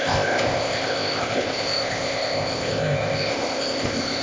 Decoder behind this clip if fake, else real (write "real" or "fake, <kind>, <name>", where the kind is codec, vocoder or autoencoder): fake, codec, ZipCodec